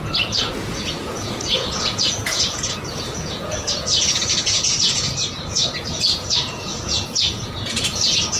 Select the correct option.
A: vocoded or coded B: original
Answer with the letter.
A